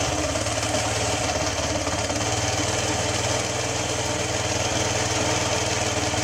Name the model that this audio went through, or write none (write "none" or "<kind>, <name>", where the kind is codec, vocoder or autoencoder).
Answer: none